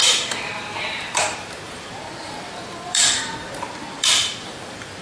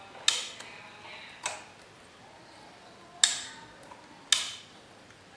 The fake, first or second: first